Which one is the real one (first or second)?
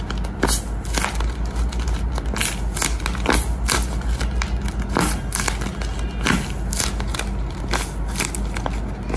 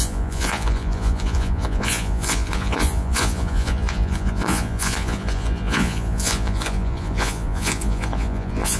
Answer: first